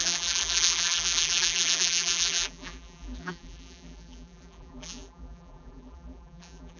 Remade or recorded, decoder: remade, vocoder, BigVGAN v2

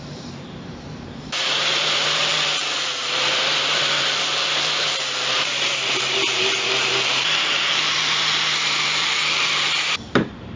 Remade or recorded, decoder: remade, vocoder, BigVGAN v2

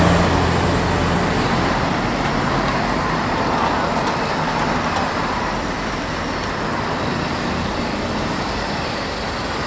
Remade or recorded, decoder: recorded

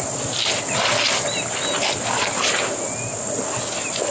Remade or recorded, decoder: recorded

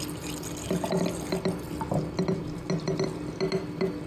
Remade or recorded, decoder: recorded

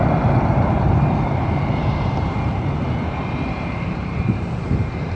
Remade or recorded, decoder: remade, vocoder, BigVGAN v2